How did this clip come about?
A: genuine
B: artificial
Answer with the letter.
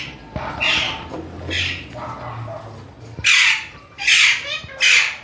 A